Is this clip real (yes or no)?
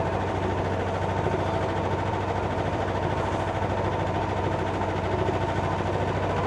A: yes